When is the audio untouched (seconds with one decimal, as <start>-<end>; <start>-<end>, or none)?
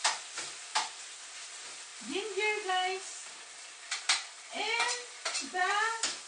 0.0-1.5; 1.9-2.7; 3.2-4.5